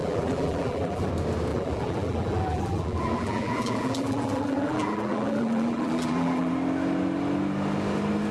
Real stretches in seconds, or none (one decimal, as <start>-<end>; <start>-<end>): 1.1-1.5; 6.5-8.3